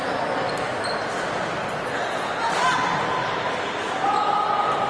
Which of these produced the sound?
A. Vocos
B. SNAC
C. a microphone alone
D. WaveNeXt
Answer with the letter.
C